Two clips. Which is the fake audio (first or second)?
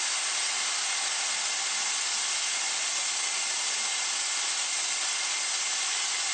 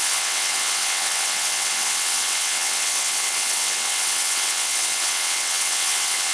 second